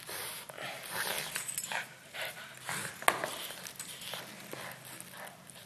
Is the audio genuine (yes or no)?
yes